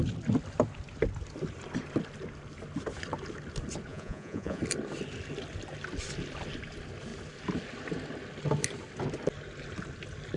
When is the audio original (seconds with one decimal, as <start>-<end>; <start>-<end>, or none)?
0.0-3.9; 4.6-10.4